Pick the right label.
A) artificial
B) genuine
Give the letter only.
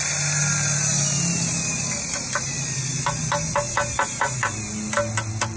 B